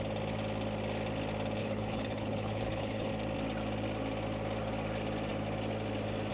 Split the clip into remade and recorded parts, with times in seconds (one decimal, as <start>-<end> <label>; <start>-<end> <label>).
0.0-1.6 recorded; 1.6-3.1 remade; 3.1-6.3 recorded